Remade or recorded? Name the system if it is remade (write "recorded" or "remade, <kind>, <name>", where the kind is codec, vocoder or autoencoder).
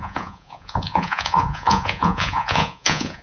remade, vocoder, Vocos